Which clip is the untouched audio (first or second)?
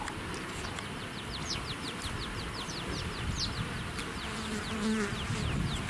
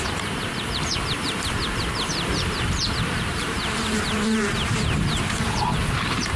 first